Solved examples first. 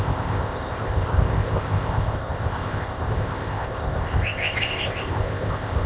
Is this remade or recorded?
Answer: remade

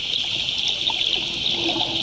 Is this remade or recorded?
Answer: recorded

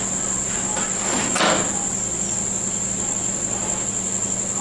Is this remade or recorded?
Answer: recorded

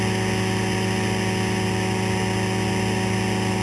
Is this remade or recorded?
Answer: recorded